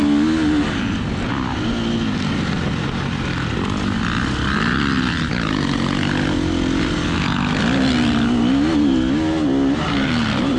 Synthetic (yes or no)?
no